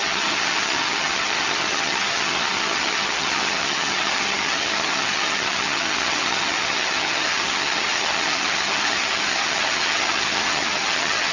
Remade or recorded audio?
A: remade